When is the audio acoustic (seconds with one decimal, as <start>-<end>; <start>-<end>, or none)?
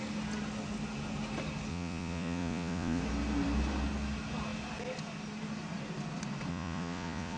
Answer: 0.0-1.7; 3.0-6.5